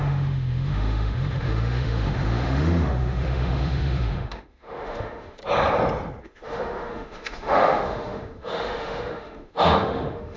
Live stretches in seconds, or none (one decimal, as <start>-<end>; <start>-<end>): 5.4-6.2